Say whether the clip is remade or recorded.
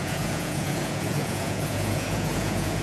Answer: remade